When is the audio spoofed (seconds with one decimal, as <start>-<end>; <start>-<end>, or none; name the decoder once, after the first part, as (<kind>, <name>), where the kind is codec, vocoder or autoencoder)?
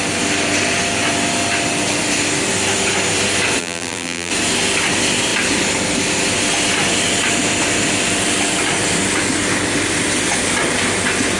3.6-4.3 (vocoder, BigVGAN v2)